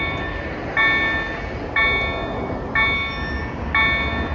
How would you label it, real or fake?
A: real